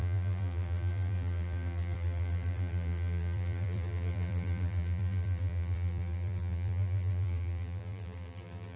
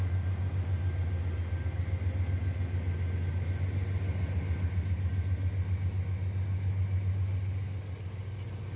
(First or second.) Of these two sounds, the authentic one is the second